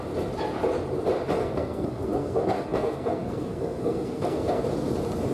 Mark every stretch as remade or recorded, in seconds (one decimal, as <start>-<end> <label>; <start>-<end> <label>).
0.0-1.4 recorded; 1.4-4.6 remade; 4.6-5.3 recorded